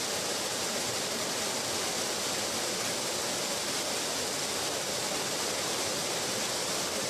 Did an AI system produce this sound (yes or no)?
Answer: no